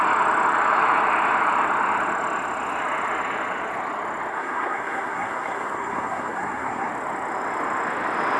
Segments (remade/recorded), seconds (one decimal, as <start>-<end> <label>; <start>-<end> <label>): 0.0-4.3 recorded; 4.3-6.9 remade; 6.9-8.4 recorded